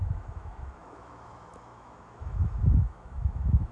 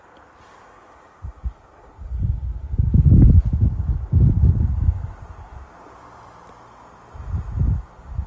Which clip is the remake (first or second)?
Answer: first